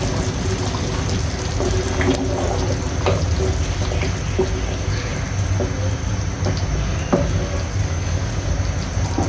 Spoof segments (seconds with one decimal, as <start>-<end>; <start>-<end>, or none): 7.7-8.3